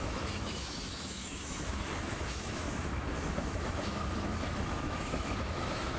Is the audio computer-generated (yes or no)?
yes